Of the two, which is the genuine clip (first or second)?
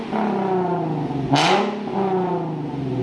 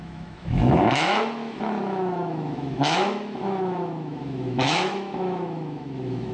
first